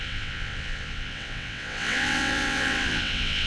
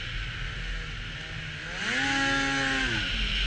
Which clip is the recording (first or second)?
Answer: second